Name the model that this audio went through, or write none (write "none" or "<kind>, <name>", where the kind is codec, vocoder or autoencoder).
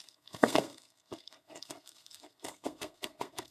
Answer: codec, SNAC